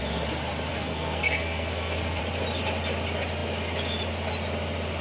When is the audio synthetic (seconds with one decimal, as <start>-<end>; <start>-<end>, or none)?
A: 0.7-2.2